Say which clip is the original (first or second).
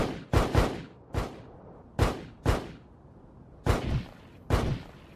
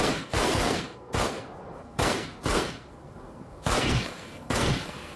first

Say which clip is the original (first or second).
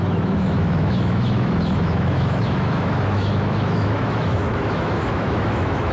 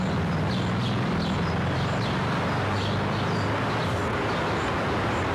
second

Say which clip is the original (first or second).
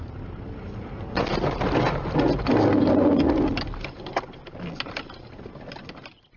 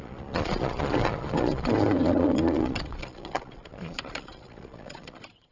first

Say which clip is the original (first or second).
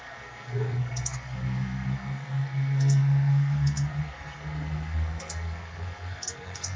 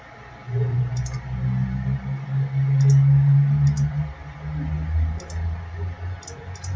second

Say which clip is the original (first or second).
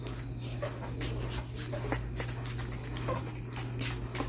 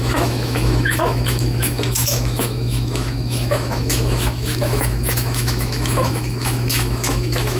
first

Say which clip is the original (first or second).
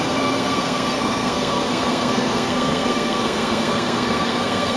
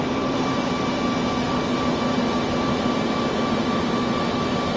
second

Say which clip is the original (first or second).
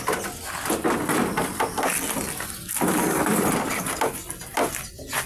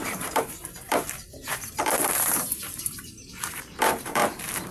first